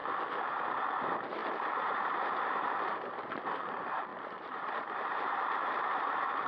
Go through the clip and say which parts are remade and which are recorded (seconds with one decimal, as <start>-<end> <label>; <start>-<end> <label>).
0.0-0.5 recorded; 0.5-6.5 remade